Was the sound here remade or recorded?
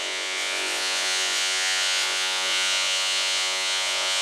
remade